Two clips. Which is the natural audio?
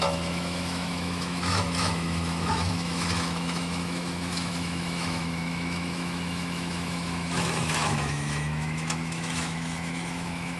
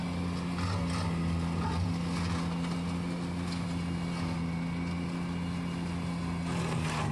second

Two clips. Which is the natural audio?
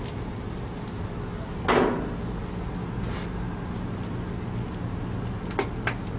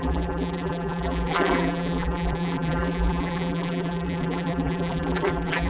first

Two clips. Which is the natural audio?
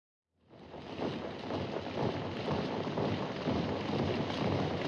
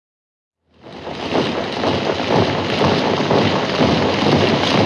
second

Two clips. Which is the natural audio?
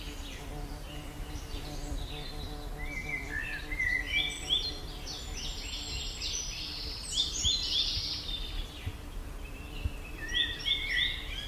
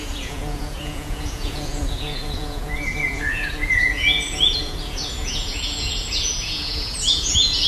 first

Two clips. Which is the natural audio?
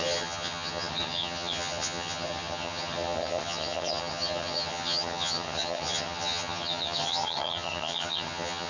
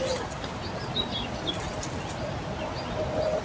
second